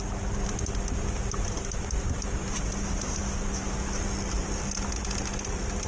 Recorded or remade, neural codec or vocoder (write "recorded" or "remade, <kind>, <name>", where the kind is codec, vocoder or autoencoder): recorded